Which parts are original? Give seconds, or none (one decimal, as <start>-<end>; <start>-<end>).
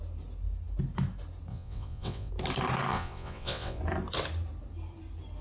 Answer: 0.0-1.5; 2.3-2.9; 3.8-5.4